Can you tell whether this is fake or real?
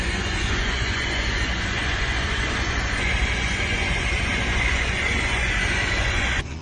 fake